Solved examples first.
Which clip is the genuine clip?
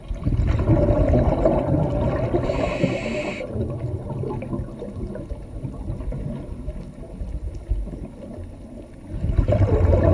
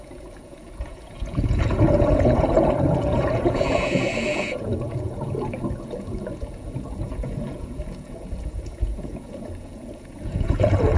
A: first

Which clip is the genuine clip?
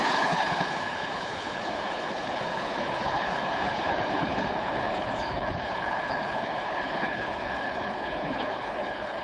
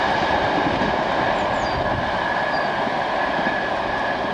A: second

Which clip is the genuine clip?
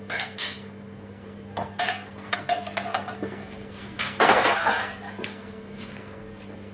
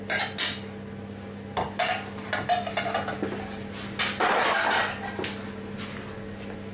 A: second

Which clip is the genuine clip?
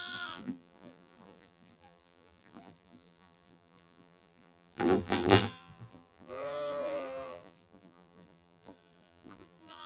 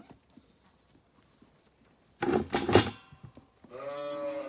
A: second